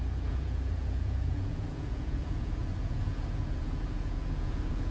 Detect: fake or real fake